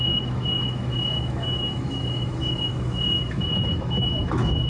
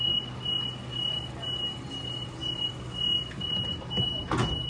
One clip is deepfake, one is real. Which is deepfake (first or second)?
first